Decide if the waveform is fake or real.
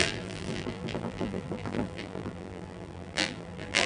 fake